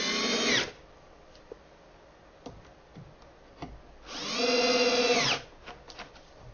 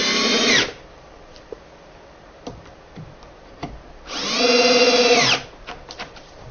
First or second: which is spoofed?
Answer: second